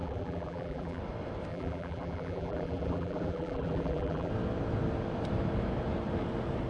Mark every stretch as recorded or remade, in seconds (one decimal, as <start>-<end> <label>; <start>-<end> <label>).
0.0-1.0 remade; 1.0-1.5 recorded; 1.5-4.3 remade; 4.3-6.7 recorded